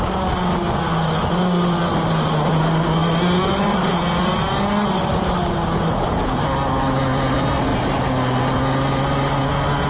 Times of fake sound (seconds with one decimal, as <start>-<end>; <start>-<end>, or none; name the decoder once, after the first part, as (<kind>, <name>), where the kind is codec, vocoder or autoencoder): none